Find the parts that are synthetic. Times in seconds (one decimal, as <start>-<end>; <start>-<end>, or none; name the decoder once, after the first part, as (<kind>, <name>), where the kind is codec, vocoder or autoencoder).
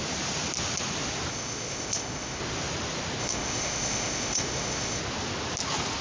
1.3-2.4 (codec, ZipCodec); 3.2-5.0